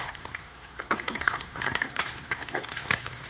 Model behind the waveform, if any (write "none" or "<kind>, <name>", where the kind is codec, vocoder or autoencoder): codec, SNAC